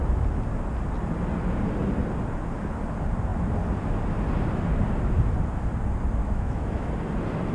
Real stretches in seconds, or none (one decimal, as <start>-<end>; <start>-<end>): 0.0-6.2; 6.9-7.5